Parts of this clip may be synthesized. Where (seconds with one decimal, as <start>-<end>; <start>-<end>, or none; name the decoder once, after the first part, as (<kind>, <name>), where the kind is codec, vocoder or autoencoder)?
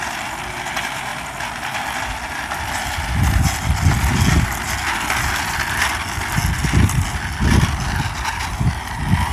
none